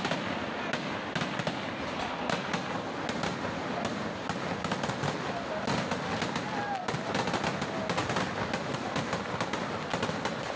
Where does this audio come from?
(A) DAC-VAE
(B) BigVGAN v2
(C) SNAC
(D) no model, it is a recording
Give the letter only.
D